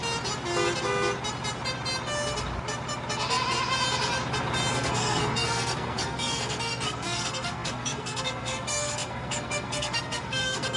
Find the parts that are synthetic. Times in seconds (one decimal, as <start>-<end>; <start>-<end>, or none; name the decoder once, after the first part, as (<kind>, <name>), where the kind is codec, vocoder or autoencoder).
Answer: 4.7-10.8 (codec, SNAC)